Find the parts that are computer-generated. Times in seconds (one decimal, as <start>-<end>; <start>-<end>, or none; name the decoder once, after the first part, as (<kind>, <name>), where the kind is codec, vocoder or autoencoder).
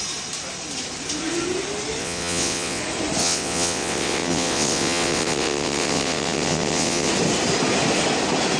2.0-2.8 (vocoder, WaveNeXt); 3.2-7.1